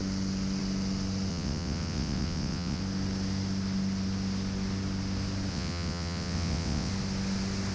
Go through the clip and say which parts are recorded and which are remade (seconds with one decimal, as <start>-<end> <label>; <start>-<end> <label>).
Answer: 0.0-1.3 recorded; 1.3-2.8 remade; 2.8-5.5 recorded; 5.5-6.9 remade; 6.9-7.7 recorded